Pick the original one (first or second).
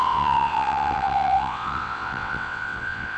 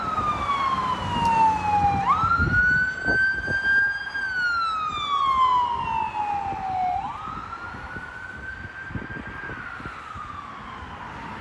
second